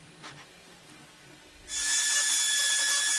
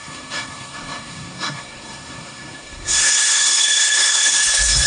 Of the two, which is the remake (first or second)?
second